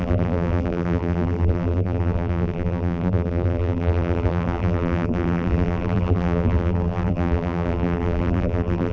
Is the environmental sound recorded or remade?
remade